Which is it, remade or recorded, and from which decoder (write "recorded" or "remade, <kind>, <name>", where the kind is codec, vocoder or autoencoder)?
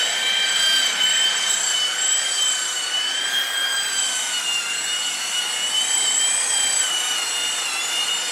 recorded